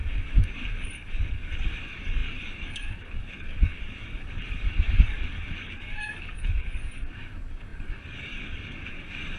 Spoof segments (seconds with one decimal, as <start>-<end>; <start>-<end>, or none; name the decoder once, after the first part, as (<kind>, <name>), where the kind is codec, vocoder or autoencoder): 0.0-9.4 (codec, DAC)